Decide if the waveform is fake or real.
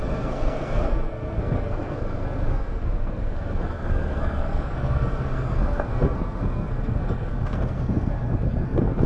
fake